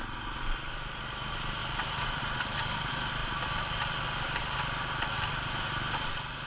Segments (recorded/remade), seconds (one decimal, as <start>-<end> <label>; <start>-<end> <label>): 0.0-1.6 recorded; 1.6-2.2 remade; 2.2-3.2 recorded; 3.2-5.8 remade; 5.8-6.5 recorded